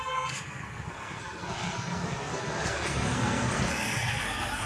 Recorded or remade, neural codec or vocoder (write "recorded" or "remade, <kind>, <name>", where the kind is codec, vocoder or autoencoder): remade, codec, SNAC